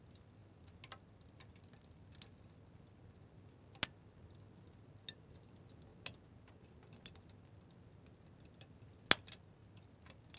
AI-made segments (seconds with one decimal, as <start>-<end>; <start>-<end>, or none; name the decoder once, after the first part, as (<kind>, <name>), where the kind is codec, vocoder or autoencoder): none